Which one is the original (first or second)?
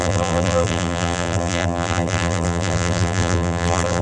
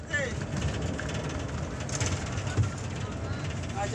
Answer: second